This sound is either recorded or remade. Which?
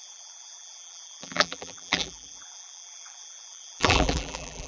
remade